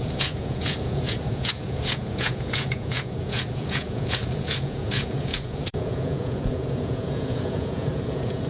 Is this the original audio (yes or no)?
no